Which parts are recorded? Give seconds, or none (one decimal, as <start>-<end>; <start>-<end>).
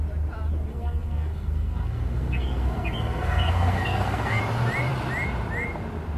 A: 0.0-0.7; 4.4-6.2